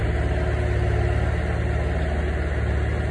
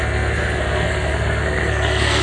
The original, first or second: first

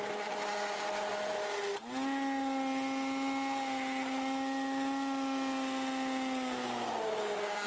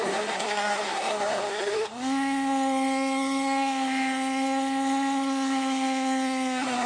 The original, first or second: first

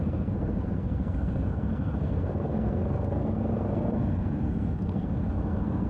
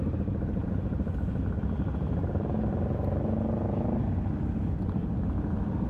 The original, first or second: second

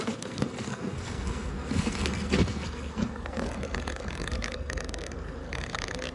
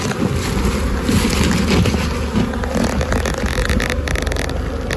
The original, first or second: second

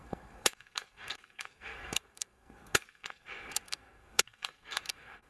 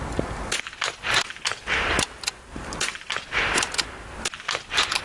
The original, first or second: second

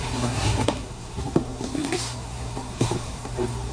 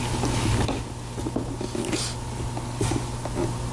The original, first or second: second